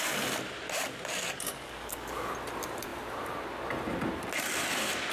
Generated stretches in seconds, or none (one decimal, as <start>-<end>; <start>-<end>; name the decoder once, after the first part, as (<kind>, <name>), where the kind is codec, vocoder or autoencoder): 1.2-2.3 (codec, DAC)